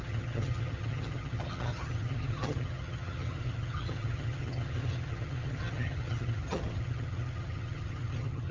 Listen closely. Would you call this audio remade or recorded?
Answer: remade